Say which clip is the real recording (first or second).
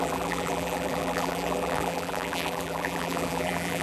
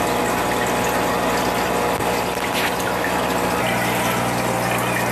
second